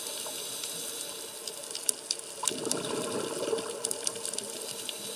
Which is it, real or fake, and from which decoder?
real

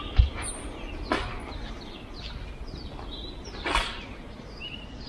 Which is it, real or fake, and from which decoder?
real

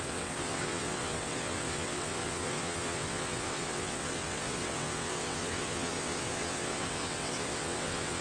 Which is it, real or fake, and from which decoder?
fake, vocoder, WaveNeXt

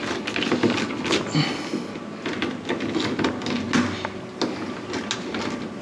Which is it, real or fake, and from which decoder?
real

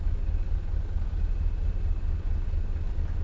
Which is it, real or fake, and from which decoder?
real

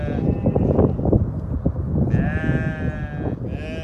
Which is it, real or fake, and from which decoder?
real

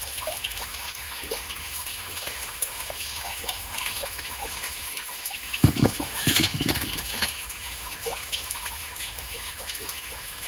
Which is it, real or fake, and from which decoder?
fake, autoencoder, DAC-VAE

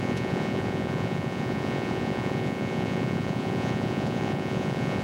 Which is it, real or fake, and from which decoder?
fake, vocoder, Vocos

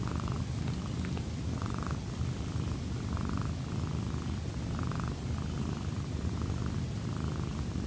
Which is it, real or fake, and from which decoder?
real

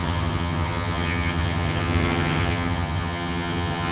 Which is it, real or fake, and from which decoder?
fake, vocoder, HiFi-GAN